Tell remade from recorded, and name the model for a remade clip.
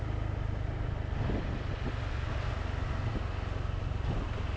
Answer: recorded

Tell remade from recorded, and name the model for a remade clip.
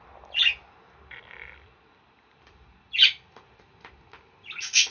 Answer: recorded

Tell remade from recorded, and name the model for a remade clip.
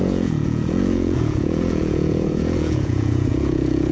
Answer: remade, vocoder, Vocos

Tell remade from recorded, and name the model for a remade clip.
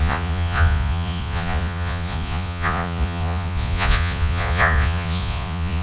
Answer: remade, vocoder, Vocos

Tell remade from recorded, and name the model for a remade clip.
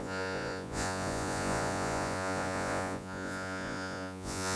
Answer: remade, vocoder, Vocos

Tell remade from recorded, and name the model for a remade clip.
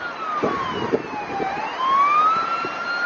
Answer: recorded